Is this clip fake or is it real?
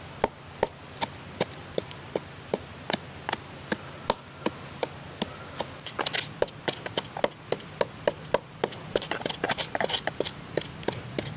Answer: real